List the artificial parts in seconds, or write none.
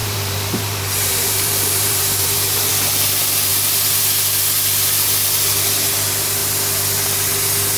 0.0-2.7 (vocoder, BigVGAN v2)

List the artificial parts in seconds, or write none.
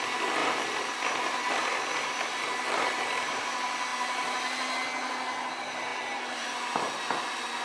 0.4-1.1 (vocoder, BigVGAN v2)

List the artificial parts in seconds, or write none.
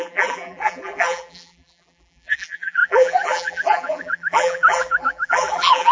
0.0-5.9 (vocoder, BigVGAN v2)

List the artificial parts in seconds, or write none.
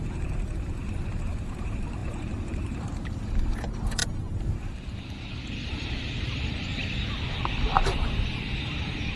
0.0-6.7 (vocoder, BigVGAN v2); 7.8-9.2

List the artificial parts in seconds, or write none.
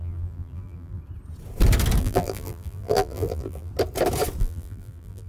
0.0-1.0 (vocoder, BigVGAN v2); 2.0-3.7; 4.4-5.3